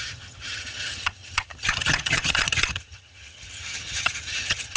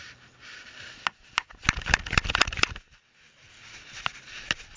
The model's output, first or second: first